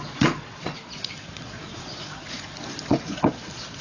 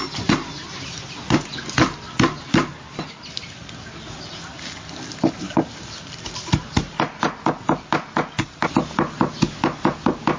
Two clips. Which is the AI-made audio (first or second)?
first